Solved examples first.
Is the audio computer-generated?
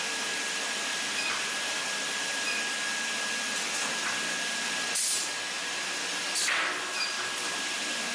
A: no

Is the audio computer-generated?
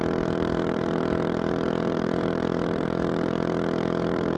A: yes